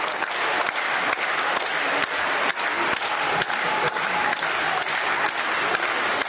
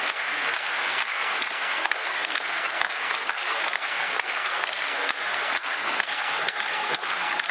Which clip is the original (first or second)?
first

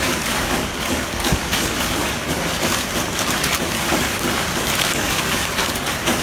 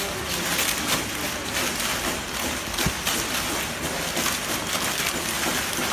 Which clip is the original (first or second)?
second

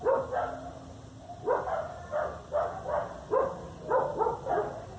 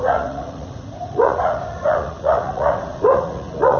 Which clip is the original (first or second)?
first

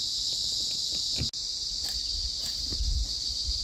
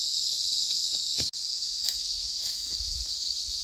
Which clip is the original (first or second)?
first